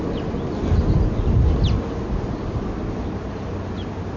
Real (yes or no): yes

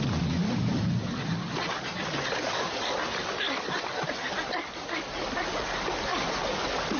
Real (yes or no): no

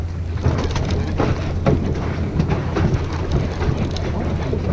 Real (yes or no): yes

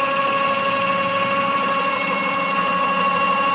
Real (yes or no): yes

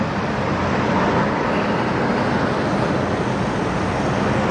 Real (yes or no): yes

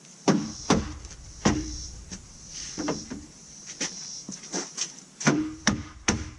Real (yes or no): no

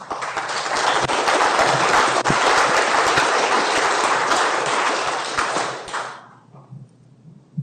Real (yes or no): no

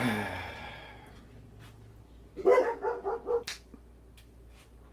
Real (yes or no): yes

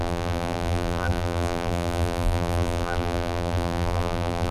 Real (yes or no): no